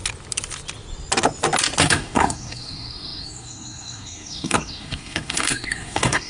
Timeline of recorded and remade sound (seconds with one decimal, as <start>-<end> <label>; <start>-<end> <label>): 0.0-1.8 recorded; 1.8-6.3 remade